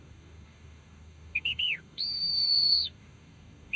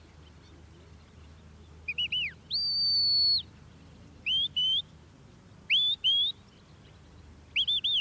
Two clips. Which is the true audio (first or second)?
second